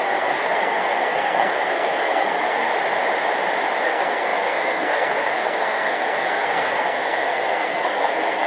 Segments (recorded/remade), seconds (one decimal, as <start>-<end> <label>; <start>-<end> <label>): 0.0-2.7 remade; 2.7-3.8 recorded; 3.8-8.5 remade